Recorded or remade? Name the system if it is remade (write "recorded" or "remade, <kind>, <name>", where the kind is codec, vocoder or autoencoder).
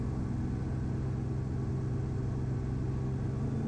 recorded